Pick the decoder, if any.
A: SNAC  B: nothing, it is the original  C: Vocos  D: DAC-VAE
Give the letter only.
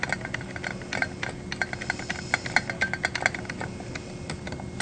B